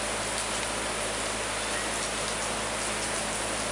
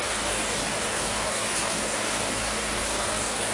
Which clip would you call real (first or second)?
first